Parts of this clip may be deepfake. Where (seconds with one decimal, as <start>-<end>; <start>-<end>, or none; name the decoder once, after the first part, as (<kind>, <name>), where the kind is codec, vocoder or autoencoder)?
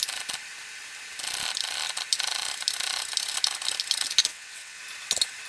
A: 4.3-4.8 (vocoder, WaveNeXt)